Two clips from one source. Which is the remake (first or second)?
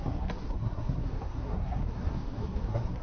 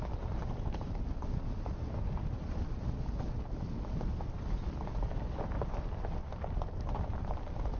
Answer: first